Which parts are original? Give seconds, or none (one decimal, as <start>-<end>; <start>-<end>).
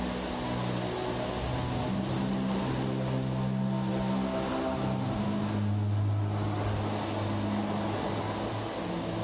0.0-9.2